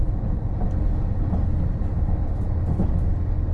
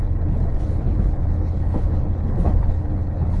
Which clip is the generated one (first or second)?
second